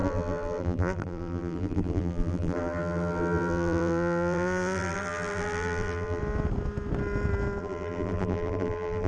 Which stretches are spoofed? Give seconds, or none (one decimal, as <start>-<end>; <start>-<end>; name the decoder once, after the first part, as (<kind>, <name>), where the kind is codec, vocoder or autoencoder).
0.0-6.2 (vocoder, BigVGAN v2); 7.6-9.1